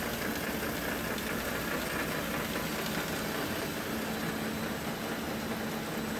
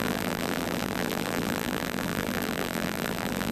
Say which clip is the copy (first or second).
second